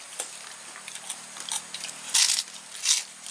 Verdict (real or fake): real